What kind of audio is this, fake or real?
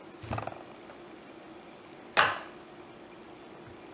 real